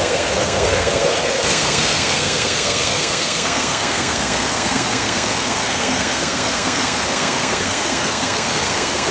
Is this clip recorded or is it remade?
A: remade